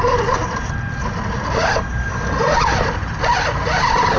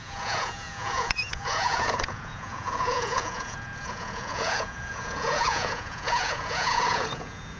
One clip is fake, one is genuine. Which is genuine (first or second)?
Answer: first